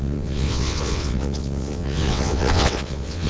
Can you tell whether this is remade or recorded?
remade